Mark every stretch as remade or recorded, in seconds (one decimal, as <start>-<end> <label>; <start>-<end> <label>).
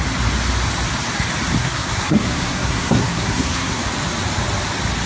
0.0-1.6 recorded; 1.6-3.8 remade; 3.8-5.1 recorded